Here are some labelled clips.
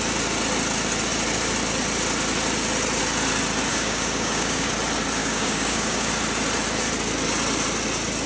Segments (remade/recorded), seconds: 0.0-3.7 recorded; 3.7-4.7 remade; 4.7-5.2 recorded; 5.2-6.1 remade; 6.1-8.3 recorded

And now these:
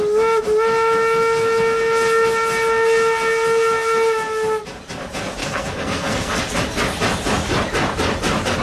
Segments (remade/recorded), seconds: 0.0-5.4 recorded; 5.4-6.4 remade; 6.4-8.6 recorded

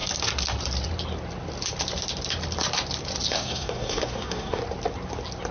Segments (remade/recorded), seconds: 0.0-3.3 recorded; 3.3-4.6 remade; 4.6-5.5 recorded

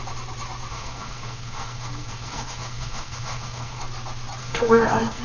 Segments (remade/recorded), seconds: 0.0-0.7 recorded; 0.7-3.8 remade; 3.8-4.4 recorded; 4.4-5.2 remade

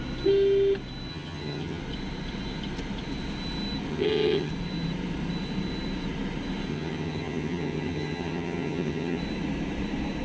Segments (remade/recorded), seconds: 0.0-1.1 recorded; 1.1-1.8 remade; 1.8-3.9 recorded; 3.9-4.5 remade; 4.5-6.7 recorded; 6.7-9.2 remade; 9.2-10.2 recorded